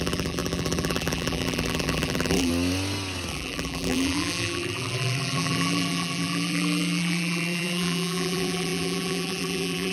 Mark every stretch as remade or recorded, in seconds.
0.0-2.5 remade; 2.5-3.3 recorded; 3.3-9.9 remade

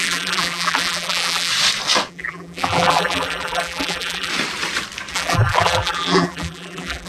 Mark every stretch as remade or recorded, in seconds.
0.0-1.5 remade; 1.5-2.1 recorded; 2.1-4.3 remade; 4.3-5.1 recorded; 5.1-7.1 remade

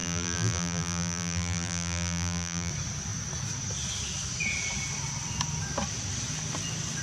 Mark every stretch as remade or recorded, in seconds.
0.0-2.7 remade; 2.7-7.0 recorded

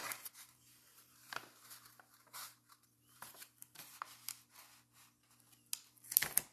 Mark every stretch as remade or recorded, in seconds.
0.0-3.9 remade; 3.9-6.5 recorded

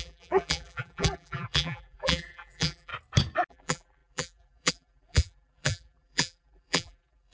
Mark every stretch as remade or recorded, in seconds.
0.0-2.9 remade; 2.9-3.5 recorded; 3.5-7.3 remade

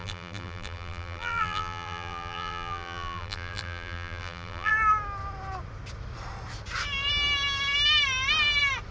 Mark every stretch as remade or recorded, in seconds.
0.0-4.7 remade; 4.7-8.9 recorded

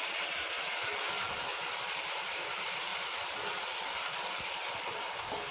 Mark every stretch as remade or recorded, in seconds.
0.0-1.5 recorded; 1.5-2.3 remade; 2.3-5.5 recorded